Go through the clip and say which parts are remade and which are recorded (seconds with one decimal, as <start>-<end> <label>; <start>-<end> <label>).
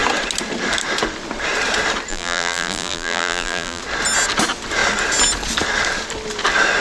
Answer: 0.0-2.1 recorded; 2.1-3.8 remade; 3.8-6.8 recorded